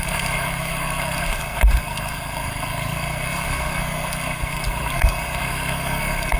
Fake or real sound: fake